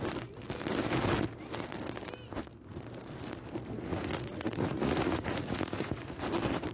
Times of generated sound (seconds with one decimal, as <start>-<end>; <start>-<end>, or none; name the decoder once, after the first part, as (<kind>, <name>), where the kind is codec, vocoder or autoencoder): 3.9-6.2 (vocoder, Vocos)